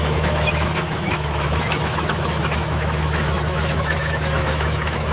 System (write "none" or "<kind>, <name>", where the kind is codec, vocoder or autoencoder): autoencoder, DAC-VAE